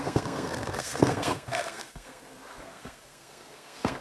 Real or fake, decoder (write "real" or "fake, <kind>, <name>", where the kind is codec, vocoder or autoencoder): fake, codec, SNAC